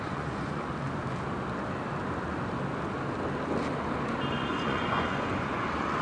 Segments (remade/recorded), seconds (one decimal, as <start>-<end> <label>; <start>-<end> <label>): 0.0-0.7 remade; 0.7-4.3 recorded; 4.3-6.0 remade